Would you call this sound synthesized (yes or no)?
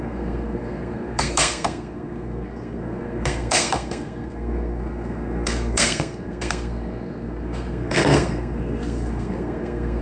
yes